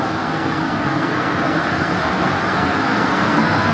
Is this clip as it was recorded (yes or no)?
no